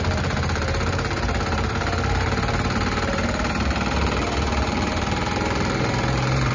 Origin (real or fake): fake